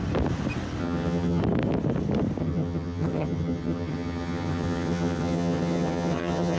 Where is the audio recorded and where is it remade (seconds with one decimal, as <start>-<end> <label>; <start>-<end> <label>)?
0.0-0.8 recorded; 0.8-1.4 remade; 1.4-2.4 recorded; 2.4-6.6 remade